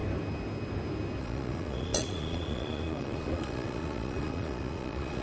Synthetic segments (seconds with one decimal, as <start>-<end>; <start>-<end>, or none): 1.2-5.2